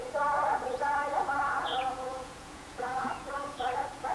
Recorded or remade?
remade